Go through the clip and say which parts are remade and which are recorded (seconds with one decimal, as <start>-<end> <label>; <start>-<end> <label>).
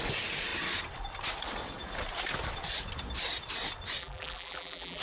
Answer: 0.0-4.0 recorded; 4.0-5.0 remade